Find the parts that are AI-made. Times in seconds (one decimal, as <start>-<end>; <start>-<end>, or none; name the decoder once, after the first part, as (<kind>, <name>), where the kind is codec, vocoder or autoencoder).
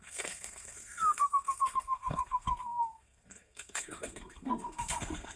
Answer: 0.0-5.4 (codec, SNAC)